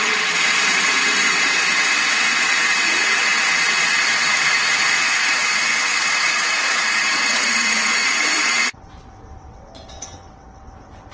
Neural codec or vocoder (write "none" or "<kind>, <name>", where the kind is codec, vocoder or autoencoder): vocoder, WaveNeXt